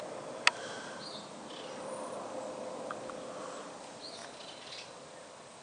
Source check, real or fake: real